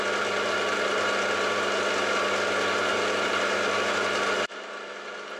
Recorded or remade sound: recorded